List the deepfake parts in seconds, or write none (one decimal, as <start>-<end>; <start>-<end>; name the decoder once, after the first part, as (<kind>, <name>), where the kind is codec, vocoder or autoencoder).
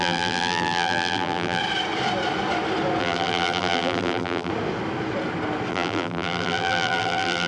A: 0.0-1.6 (vocoder, BigVGAN v2); 3.0-4.5; 5.7-7.5